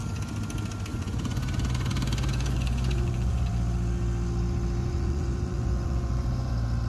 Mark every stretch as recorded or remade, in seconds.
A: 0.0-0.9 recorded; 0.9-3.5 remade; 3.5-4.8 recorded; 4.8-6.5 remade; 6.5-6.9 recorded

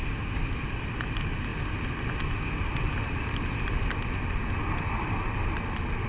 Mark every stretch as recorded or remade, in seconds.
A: 0.0-6.1 recorded